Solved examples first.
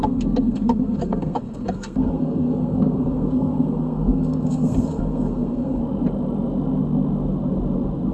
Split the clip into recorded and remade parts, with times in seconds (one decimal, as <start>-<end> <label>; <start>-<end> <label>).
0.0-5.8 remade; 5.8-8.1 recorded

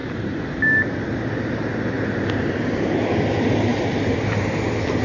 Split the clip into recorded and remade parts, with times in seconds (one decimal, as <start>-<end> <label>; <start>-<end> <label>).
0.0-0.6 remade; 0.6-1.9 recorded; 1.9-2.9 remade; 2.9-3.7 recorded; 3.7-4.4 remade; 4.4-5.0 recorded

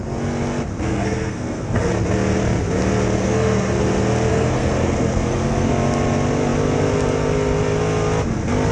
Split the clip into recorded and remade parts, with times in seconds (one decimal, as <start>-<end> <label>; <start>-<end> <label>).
0.0-0.9 recorded; 0.9-1.9 remade; 1.9-3.2 recorded; 3.2-3.8 remade; 3.8-4.3 recorded; 4.3-5.7 remade; 5.7-8.7 recorded